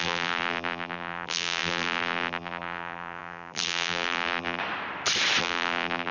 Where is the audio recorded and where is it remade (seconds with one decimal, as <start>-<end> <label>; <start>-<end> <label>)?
0.0-4.6 remade; 4.6-5.4 recorded; 5.4-6.1 remade

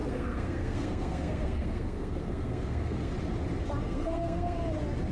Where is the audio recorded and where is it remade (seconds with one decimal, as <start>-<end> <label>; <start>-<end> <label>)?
0.0-3.1 remade; 3.1-3.8 recorded; 3.8-4.6 remade; 4.6-5.1 recorded

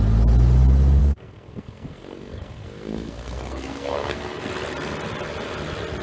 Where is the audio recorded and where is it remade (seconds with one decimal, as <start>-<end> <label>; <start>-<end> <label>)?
0.0-1.0 recorded; 1.0-4.5 remade; 4.5-6.0 recorded

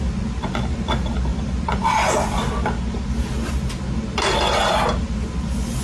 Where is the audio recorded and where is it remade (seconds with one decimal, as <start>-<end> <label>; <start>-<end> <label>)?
0.0-5.8 recorded

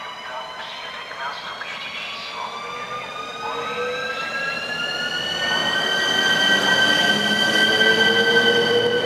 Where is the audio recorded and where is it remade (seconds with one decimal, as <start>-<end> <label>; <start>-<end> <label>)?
0.0-9.1 recorded